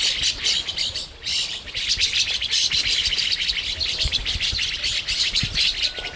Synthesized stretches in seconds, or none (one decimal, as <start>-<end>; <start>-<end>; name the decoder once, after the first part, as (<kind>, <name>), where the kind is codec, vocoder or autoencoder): none

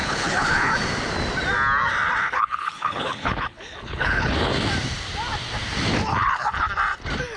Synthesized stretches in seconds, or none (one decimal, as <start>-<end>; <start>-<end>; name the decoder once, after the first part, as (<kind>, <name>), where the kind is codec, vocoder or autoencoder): 0.0-0.7 (codec, HILCodec); 2.2-4.6; 6.1-6.7

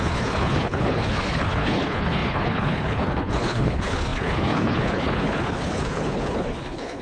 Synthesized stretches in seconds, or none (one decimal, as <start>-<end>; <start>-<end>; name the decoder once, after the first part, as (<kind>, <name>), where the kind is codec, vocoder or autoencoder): 0.0-7.0 (codec, HILCodec)

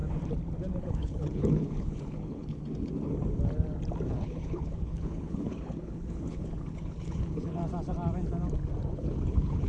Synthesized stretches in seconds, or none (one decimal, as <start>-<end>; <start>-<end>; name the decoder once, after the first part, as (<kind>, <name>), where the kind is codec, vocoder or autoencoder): 0.9-2.6 (codec, HILCodec); 4.1-7.6; 8.9-9.7

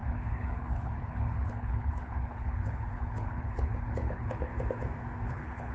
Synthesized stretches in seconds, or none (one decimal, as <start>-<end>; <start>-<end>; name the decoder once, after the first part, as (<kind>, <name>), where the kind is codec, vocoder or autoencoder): 0.0-4.5 (codec, HILCodec); 5.3-5.7

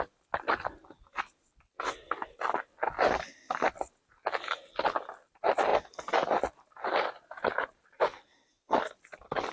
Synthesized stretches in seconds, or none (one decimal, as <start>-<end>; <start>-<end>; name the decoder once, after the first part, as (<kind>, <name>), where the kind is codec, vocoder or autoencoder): none

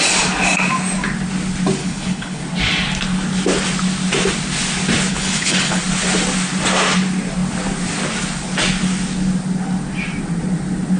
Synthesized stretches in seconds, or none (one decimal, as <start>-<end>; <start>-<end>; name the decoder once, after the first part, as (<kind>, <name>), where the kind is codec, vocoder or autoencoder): 1.8-2.4 (codec, HILCodec); 5.1-5.8